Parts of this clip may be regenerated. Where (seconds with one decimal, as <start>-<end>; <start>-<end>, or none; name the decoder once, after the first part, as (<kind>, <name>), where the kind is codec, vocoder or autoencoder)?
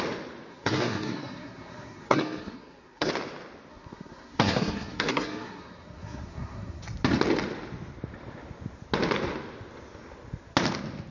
0.5-3.1 (codec, SNAC); 3.7-6.8